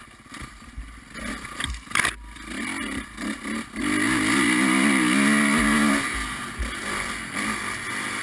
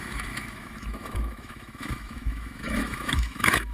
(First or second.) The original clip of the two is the first